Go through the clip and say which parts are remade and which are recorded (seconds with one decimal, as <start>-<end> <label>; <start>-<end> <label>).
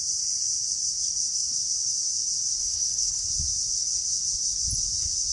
0.0-2.6 recorded; 2.6-3.2 remade; 3.2-5.3 recorded